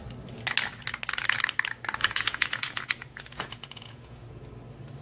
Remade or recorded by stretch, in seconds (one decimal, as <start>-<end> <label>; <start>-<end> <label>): 0.0-2.0 recorded; 2.0-4.4 remade; 4.4-5.0 recorded